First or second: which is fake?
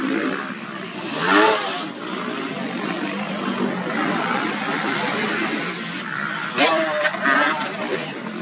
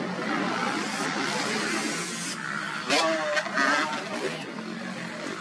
first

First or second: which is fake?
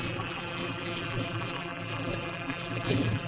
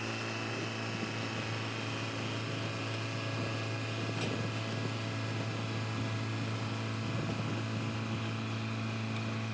first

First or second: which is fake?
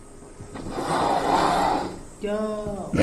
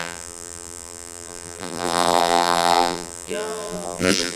second